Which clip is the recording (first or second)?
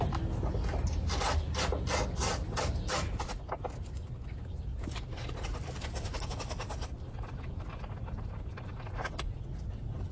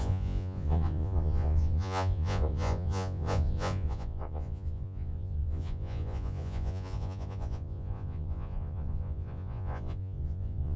first